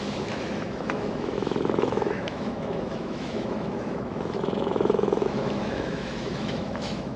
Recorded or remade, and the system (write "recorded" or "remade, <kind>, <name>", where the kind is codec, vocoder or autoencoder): remade, autoencoder, DAC-VAE